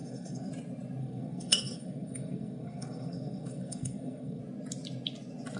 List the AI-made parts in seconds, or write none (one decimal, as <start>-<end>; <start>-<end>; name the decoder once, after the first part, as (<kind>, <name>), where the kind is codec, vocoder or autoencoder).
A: 0.0-0.5 (codec, SNAC); 1.0-4.4